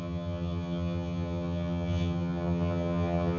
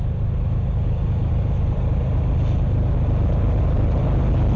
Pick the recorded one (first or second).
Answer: second